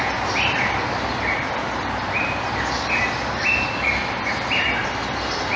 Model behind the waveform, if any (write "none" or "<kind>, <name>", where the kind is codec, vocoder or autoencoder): none